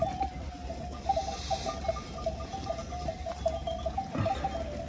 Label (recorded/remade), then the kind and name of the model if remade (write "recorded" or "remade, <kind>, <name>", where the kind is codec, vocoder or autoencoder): recorded